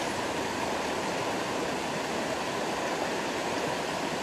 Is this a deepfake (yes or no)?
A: no